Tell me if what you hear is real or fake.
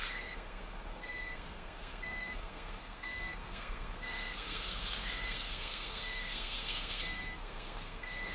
fake